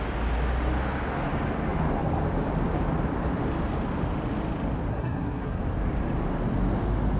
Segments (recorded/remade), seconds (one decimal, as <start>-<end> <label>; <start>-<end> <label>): 0.0-4.9 recorded; 4.9-5.6 remade; 5.6-7.2 recorded